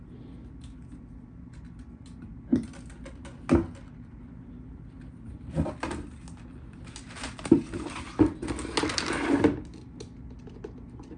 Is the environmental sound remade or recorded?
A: recorded